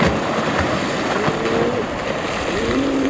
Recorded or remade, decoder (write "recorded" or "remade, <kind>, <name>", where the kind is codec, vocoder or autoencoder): recorded